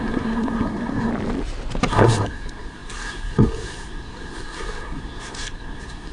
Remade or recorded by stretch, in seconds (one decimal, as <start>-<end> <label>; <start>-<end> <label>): 0.0-1.1 remade; 1.1-1.9 recorded; 1.9-6.1 remade